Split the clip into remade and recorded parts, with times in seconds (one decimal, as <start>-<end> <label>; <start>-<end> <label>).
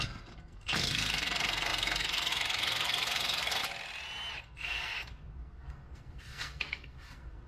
0.0-3.6 remade; 3.6-4.4 recorded; 4.4-7.5 remade